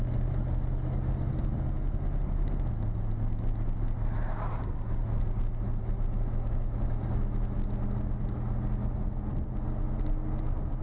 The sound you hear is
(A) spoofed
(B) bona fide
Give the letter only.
B